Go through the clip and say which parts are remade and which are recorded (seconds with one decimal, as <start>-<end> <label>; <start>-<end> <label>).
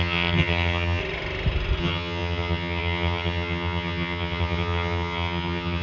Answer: 0.0-1.0 remade; 1.0-1.8 recorded; 1.8-5.8 remade